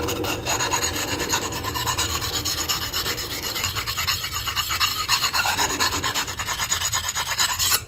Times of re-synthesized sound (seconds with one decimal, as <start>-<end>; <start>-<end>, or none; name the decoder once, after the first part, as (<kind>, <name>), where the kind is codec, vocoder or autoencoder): 1.0-3.9 (codec, DAC); 4.9-6.4